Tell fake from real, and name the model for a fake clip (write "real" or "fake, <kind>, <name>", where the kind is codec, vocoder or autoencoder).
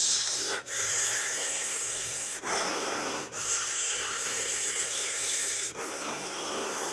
fake, codec, SNAC